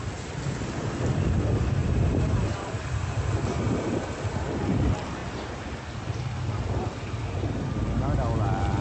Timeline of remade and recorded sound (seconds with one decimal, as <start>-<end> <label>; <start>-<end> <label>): 0.0-8.8 recorded